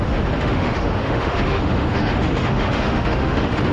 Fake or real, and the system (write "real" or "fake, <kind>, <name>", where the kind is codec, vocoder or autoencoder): fake, autoencoder, DAC-VAE